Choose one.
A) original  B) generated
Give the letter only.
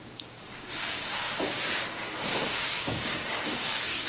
B